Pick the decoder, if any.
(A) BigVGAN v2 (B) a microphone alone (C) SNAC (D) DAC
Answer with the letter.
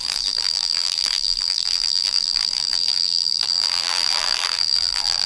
A